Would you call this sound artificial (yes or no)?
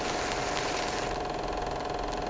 no